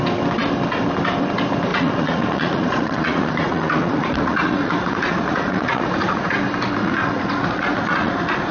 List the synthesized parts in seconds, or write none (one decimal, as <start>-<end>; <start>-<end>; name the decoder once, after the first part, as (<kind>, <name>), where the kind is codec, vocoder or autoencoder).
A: 1.7-6.3 (vocoder, Vocos); 6.8-8.5